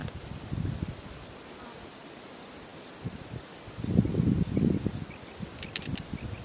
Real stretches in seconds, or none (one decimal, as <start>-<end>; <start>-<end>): 0.0-6.4